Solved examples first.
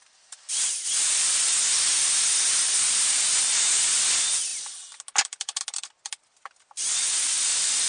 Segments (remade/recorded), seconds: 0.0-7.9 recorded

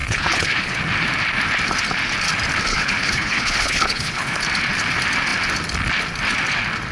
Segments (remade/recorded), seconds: 0.0-0.8 remade; 0.8-2.7 recorded; 2.7-4.4 remade; 4.4-6.9 recorded